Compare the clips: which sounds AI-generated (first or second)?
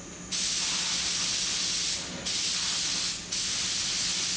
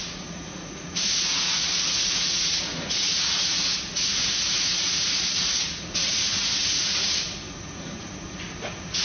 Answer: second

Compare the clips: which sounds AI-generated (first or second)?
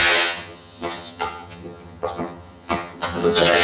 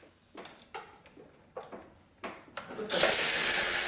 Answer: first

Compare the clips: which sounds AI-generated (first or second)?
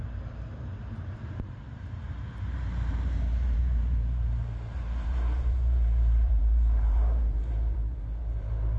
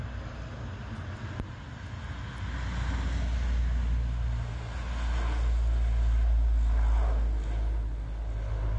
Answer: first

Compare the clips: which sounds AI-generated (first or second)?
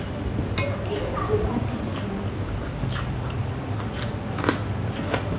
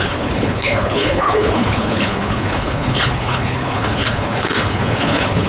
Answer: second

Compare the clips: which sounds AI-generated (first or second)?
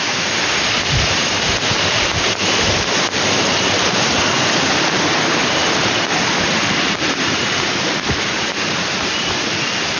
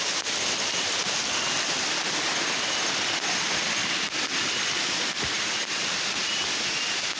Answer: first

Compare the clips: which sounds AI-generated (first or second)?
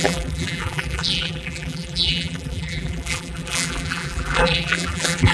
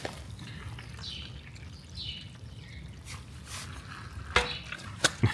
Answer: first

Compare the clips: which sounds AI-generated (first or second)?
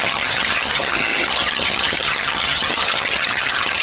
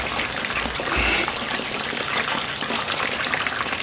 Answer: first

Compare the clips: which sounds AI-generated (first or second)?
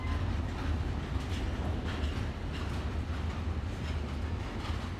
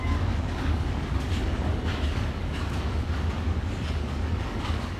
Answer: second